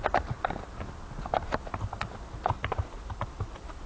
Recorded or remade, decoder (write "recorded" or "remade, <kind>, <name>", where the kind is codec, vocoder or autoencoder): recorded